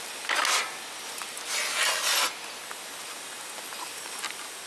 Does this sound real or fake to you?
real